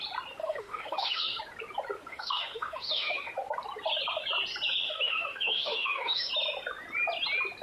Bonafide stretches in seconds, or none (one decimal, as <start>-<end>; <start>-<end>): 0.0-0.4; 1.4-2.1; 3.3-4.8; 6.3-7.6